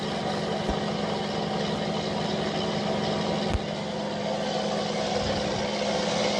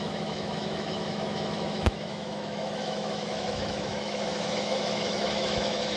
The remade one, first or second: second